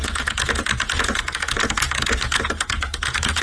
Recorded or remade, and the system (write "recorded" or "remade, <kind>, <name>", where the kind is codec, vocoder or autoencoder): remade, vocoder, Vocos